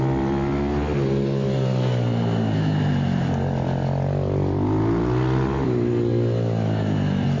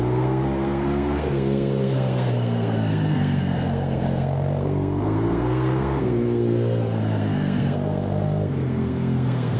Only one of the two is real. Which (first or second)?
first